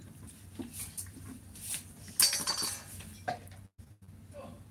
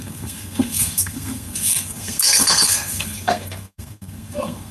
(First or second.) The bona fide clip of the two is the first